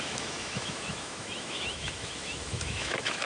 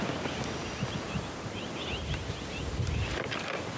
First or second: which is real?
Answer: second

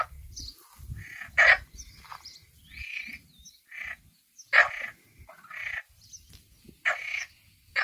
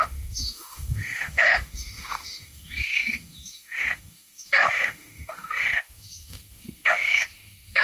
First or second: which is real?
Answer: first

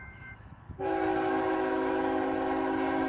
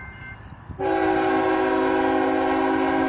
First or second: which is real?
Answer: second